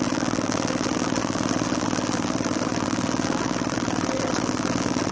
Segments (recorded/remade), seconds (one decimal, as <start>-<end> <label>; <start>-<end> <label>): 0.0-5.1 remade